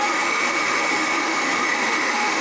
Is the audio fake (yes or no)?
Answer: yes